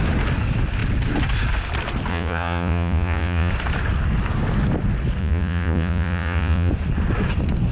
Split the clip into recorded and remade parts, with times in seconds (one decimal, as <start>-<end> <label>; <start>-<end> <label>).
0.0-2.1 recorded; 2.1-3.5 remade; 3.5-5.2 recorded; 5.2-6.7 remade; 6.7-7.7 recorded